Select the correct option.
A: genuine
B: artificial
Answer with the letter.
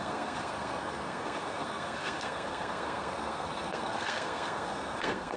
B